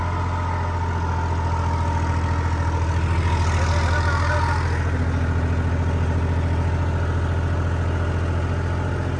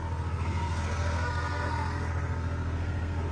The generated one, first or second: second